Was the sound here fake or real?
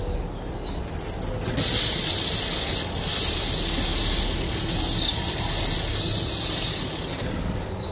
real